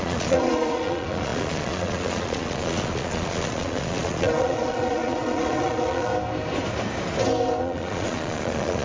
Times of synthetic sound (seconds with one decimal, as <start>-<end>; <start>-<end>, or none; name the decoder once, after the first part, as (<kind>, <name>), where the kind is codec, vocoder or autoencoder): 0.0-6.1 (vocoder, Vocos); 7.6-8.8